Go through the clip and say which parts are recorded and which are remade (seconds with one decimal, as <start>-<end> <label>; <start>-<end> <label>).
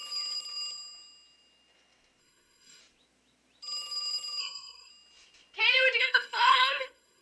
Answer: 0.0-2.2 recorded; 2.2-2.8 remade; 2.8-4.4 recorded; 4.4-4.9 remade; 4.9-6.0 recorded; 6.0-7.2 remade